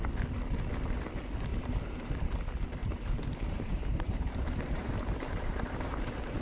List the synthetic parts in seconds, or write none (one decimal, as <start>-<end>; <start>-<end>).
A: 1.5-2.1; 2.8-6.4